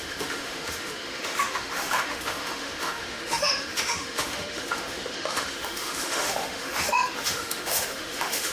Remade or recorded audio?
remade